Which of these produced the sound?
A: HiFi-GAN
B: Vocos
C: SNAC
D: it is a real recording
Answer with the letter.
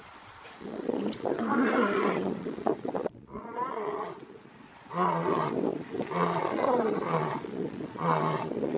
B